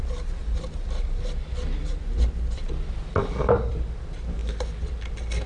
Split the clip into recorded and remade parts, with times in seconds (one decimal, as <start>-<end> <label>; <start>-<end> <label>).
0.0-5.5 recorded